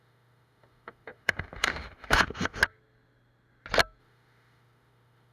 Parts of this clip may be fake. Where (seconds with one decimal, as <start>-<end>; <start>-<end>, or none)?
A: 0.0-2.6; 4.0-5.3